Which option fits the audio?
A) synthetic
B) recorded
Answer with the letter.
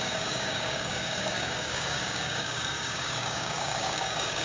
A